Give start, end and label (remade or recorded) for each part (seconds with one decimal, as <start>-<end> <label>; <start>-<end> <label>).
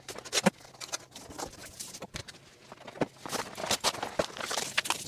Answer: 0.0-1.6 recorded; 1.6-2.5 remade; 2.5-5.1 recorded